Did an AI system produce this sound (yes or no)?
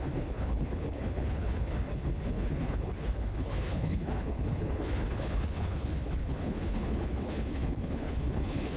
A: yes